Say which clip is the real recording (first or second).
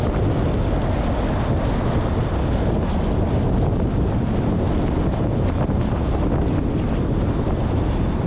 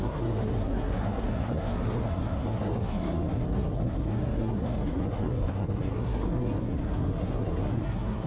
first